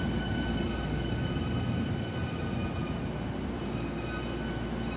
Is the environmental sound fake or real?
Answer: real